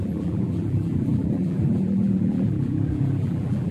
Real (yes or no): no